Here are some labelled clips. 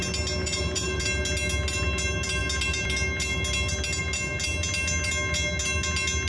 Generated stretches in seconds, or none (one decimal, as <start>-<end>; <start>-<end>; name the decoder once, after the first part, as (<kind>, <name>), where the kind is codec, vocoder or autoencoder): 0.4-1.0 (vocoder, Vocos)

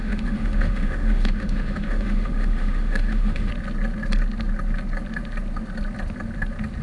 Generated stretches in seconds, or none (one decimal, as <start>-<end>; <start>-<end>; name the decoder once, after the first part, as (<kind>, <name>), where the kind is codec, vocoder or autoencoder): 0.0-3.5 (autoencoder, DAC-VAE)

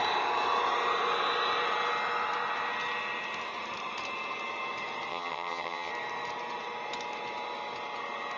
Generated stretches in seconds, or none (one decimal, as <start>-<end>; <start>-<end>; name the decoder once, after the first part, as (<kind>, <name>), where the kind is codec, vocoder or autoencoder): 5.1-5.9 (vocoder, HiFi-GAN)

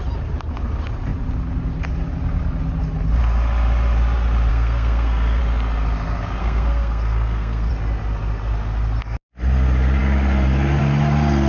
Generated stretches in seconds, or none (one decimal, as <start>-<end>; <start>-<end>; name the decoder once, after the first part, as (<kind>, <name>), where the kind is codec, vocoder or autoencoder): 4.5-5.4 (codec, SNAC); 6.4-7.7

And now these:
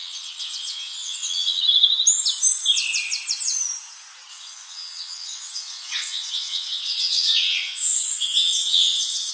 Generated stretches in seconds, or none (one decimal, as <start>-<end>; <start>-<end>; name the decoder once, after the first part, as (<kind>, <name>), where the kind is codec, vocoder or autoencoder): 0.0-1.6 (vocoder, WaveNeXt); 4.3-9.3

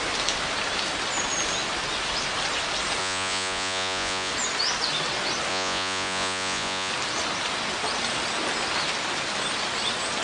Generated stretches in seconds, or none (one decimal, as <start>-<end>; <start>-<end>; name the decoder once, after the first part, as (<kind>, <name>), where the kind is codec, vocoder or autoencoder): 3.0-4.3 (vocoder, Vocos); 5.5-6.9

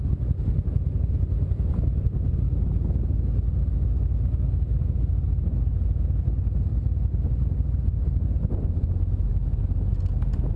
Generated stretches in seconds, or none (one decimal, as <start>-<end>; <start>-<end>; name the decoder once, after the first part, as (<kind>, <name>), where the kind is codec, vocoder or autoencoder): none